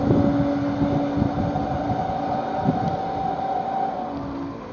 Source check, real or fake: real